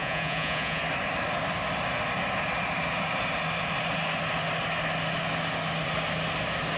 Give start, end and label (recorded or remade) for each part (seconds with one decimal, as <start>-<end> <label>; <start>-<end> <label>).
0.0-0.8 remade; 0.8-6.8 recorded